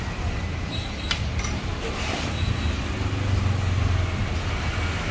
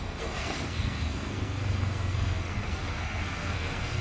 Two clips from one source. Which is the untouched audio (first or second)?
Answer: first